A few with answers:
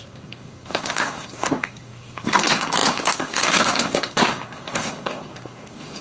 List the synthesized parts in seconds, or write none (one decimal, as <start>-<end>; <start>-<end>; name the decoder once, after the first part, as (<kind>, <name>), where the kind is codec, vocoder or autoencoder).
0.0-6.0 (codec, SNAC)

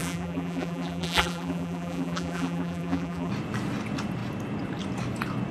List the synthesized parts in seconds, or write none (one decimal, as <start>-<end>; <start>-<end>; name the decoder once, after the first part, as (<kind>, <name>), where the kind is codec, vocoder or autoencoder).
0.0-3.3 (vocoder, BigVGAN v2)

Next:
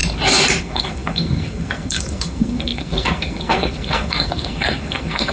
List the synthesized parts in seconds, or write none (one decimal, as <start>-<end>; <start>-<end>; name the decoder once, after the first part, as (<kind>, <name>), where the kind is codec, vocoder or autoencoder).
0.6-5.3 (codec, SNAC)